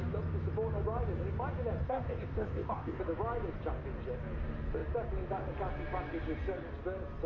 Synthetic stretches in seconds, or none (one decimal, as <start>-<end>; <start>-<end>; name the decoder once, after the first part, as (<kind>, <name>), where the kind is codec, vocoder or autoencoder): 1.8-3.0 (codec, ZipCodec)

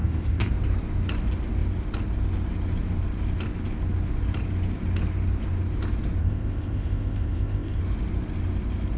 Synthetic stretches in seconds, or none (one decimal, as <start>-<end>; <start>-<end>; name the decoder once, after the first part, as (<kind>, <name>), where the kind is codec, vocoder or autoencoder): 0.0-0.5 (codec, ZipCodec); 6.2-7.8

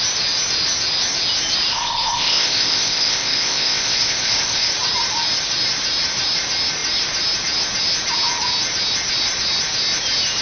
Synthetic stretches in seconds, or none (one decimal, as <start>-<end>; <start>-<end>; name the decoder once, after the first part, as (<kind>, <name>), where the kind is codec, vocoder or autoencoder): 1.7-4.7 (codec, ZipCodec)